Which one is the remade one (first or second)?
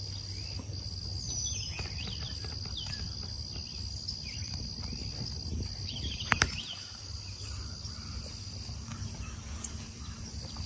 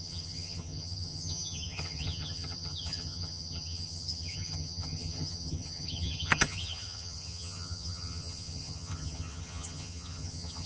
second